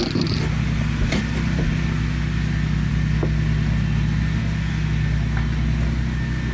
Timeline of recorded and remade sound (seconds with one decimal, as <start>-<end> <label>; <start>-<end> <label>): 0.0-6.5 recorded